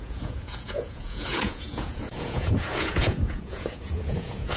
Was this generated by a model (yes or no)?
yes